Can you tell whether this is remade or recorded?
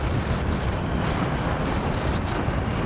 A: recorded